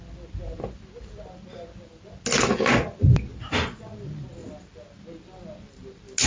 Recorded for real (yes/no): yes